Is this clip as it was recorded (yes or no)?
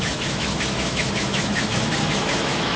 no